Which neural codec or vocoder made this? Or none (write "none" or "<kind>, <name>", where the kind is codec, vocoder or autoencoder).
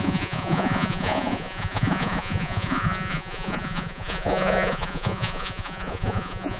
vocoder, Vocos